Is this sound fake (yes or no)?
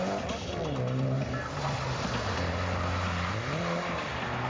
no